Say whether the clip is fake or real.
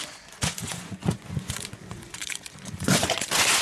fake